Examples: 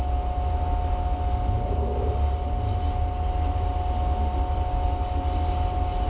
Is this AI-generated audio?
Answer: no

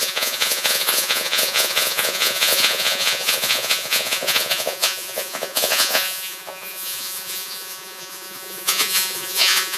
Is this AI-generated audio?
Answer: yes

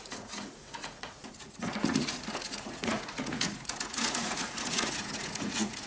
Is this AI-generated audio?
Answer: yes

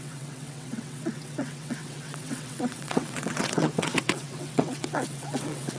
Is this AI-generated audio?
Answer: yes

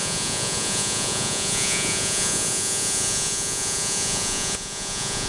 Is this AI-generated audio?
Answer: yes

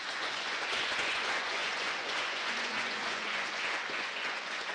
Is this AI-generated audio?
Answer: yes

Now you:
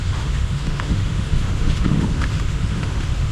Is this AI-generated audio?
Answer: yes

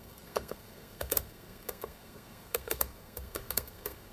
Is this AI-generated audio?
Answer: yes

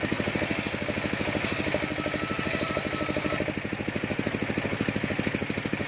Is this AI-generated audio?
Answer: no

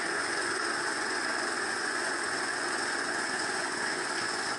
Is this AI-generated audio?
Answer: yes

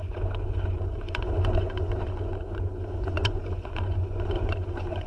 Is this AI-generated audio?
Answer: yes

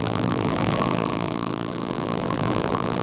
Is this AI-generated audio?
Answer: yes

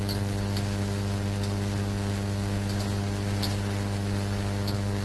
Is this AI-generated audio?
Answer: no